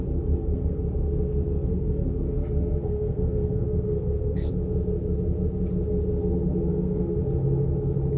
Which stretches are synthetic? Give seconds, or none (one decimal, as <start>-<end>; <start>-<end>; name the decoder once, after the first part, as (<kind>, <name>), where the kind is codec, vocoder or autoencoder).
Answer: 0.4-4.5 (codec, SNAC); 6.7-7.2